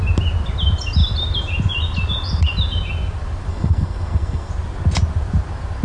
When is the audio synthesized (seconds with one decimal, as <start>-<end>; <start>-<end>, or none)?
3.5-4.5